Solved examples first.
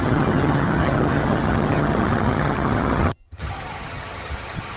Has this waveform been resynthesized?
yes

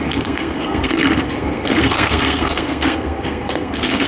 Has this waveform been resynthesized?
yes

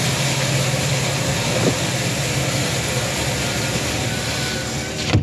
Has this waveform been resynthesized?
no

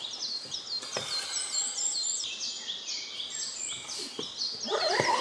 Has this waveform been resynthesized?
no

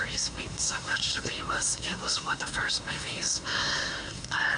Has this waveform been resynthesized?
yes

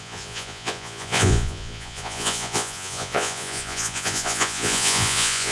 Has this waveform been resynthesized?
yes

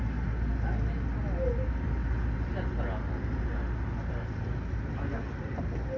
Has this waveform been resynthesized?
no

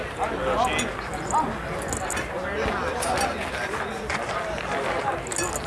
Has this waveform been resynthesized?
no